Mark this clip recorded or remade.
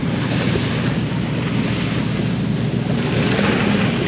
recorded